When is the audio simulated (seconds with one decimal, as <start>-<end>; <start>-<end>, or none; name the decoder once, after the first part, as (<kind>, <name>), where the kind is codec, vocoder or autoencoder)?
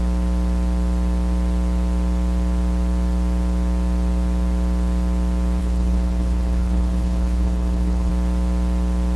5.6-8.1 (codec, HILCodec)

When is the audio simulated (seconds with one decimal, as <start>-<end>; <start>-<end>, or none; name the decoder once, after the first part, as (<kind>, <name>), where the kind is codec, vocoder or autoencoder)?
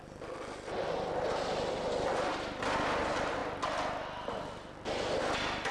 none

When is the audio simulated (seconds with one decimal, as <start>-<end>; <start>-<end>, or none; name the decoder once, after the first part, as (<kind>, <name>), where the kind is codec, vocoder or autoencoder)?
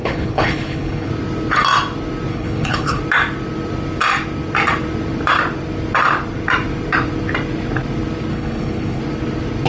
0.0-1.1 (codec, HILCodec); 2.3-3.0; 8.3-9.0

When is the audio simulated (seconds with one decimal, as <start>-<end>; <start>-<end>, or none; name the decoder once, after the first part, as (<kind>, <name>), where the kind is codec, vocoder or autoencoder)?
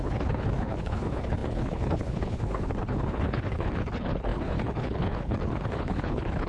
0.0-6.5 (codec, HILCodec)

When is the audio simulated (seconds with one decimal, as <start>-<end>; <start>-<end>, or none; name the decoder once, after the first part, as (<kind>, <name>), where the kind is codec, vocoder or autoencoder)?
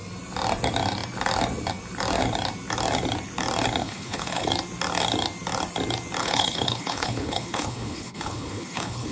3.8-4.5 (codec, HILCodec); 6.2-9.1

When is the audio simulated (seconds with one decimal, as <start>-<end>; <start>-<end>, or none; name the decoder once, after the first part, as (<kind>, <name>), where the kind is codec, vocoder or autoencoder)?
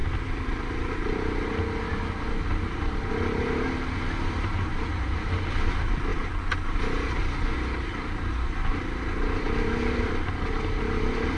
none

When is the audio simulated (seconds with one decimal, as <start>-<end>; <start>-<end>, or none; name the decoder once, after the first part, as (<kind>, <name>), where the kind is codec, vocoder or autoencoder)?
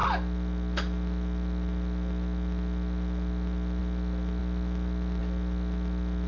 none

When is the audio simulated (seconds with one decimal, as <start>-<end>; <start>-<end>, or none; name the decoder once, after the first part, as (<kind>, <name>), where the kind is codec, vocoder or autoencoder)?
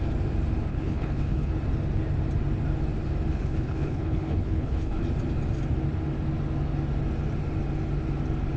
0.7-1.5 (codec, HILCodec); 3.3-5.0